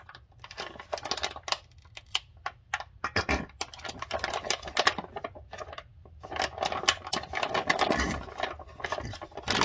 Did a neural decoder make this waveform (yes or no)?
no